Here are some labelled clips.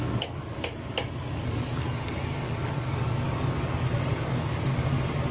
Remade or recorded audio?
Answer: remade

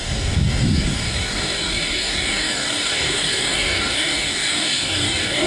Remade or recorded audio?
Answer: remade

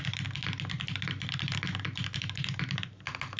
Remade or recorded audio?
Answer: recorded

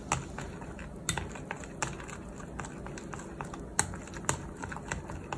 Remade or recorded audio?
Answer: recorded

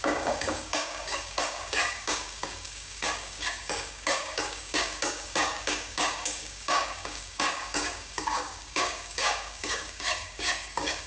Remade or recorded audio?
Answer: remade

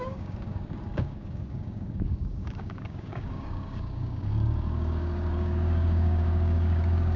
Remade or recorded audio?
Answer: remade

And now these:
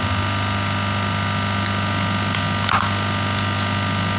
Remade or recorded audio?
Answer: recorded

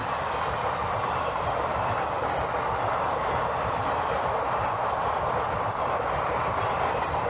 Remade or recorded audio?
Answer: recorded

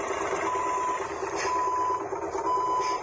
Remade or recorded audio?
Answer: recorded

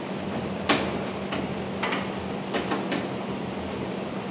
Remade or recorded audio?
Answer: recorded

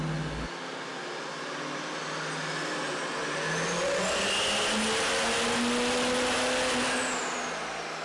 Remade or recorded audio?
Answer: recorded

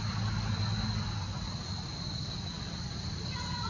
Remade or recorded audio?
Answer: recorded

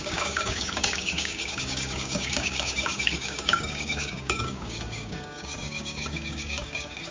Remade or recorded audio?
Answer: remade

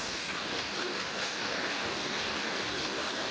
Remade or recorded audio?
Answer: remade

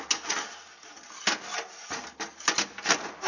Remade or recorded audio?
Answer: recorded